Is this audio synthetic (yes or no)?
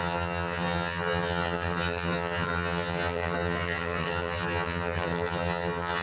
yes